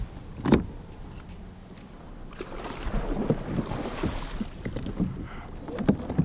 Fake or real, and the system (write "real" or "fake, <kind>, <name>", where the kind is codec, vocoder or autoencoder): real